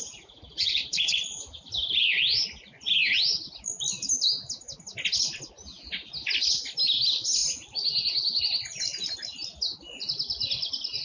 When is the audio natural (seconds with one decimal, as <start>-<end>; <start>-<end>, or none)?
1.6-11.0